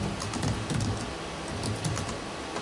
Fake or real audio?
real